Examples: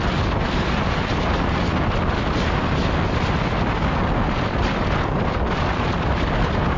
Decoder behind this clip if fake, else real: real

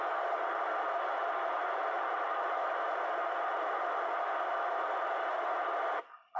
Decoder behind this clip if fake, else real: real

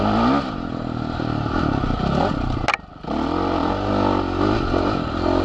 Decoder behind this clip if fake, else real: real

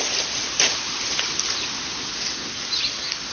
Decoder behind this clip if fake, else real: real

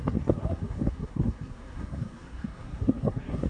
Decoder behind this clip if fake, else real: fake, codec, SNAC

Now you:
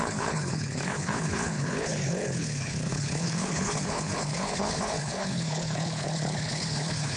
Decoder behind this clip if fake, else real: fake, codec, HILCodec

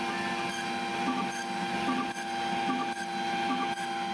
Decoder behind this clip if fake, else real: real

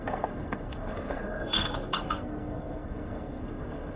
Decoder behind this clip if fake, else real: fake, codec, SNAC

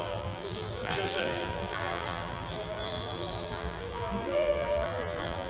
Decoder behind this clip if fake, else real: fake, vocoder, BigVGAN v2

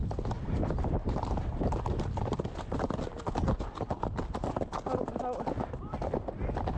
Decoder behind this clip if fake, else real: real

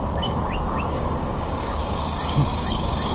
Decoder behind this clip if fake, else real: fake, codec, DAC